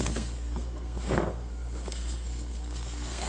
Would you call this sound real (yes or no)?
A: no